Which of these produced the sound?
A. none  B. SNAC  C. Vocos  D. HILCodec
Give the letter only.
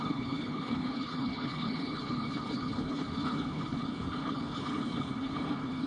D